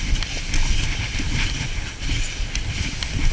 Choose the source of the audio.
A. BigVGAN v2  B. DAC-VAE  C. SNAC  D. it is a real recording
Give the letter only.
D